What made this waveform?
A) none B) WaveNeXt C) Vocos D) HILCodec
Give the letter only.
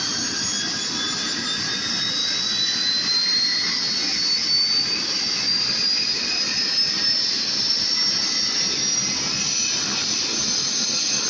A